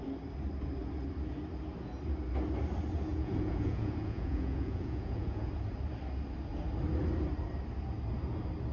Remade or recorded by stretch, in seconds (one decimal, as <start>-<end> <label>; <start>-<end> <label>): 0.0-3.1 recorded; 3.1-5.5 remade; 5.5-8.7 recorded